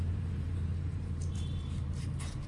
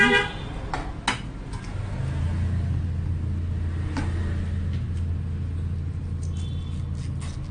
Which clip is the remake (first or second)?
first